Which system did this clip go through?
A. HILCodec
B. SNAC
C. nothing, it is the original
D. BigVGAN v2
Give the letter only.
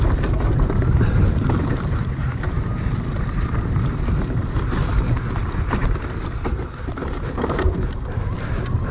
D